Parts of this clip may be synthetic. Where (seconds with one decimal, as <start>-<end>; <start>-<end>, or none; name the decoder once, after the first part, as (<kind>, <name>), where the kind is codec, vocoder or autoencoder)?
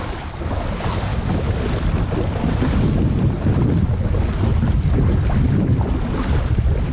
none